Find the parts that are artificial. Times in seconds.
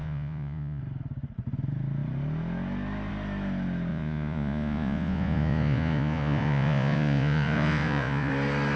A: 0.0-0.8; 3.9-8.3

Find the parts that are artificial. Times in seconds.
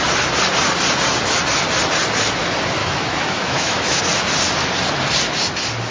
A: 2.8-4.0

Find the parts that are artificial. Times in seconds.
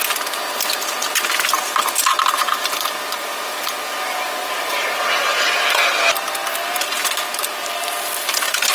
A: none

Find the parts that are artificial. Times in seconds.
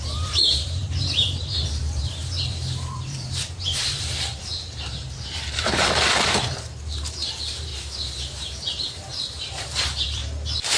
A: 0.0-7.7; 8.3-10.2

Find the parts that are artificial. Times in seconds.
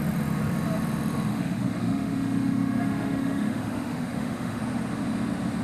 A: 1.3-4.6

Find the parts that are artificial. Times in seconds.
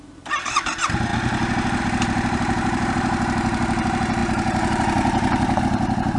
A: 0.0-1.1; 1.8-6.2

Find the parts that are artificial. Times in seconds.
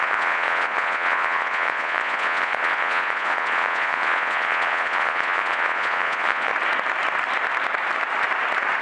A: 0.0-6.5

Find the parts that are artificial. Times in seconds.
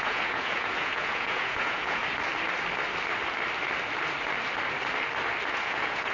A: 0.0-2.0; 5.5-6.1